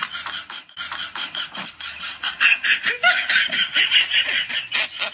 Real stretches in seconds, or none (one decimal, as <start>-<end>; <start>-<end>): 0.0-5.1